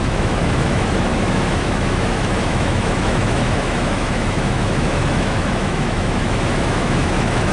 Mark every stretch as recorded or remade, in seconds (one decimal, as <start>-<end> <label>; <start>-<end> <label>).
0.0-7.5 remade